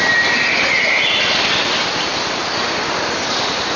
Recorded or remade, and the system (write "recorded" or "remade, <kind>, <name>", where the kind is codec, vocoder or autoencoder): recorded